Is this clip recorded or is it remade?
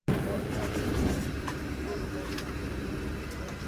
remade